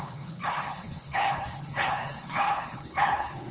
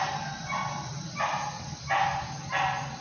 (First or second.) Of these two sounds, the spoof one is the first